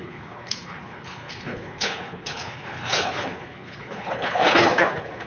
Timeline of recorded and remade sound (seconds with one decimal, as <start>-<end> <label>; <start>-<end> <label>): 0.0-5.3 remade